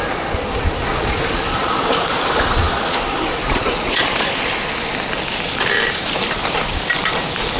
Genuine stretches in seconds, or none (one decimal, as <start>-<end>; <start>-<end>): 0.0-0.8; 4.3-7.6